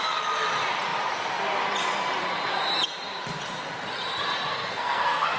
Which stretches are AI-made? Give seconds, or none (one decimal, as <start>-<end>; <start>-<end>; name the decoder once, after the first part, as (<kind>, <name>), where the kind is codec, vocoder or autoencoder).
4.5-5.4 (codec, SNAC)